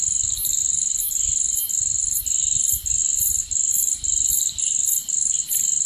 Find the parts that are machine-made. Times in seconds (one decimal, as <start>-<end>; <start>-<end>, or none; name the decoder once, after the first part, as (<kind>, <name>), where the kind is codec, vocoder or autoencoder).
none

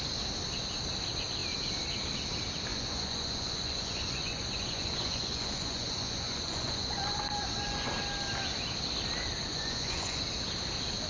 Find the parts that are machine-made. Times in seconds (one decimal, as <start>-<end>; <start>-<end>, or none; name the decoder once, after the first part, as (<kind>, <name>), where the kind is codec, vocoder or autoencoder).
2.7-7.9 (vocoder, Vocos); 9.5-10.2

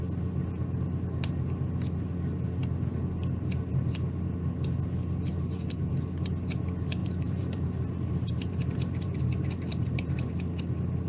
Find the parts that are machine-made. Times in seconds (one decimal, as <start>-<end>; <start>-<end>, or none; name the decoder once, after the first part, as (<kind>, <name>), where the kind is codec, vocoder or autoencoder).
5.3-5.9 (vocoder, BigVGAN v2); 7.0-9.2; 9.7-10.3